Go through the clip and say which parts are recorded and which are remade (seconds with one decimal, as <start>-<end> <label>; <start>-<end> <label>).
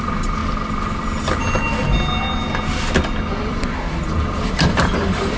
0.0-0.4 remade; 0.4-3.3 recorded; 3.3-5.4 remade